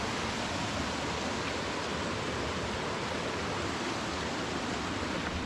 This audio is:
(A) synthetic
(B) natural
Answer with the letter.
B